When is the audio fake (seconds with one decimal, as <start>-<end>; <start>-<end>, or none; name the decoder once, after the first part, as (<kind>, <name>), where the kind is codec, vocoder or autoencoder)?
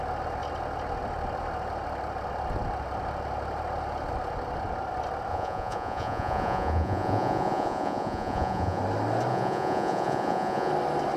5.3-8.8 (vocoder, Vocos); 9.3-10.7